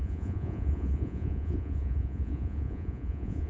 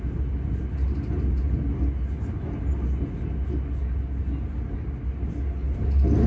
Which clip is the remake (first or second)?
first